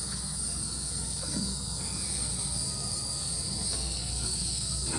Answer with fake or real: fake